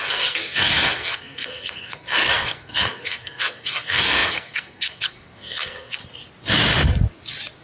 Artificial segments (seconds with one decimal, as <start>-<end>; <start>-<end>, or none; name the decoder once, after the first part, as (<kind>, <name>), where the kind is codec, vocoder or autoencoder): 0.0-6.0 (codec, SNAC)